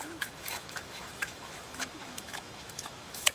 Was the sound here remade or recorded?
remade